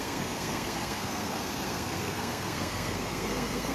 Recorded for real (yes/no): no